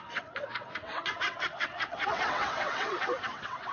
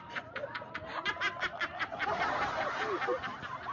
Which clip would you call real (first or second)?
second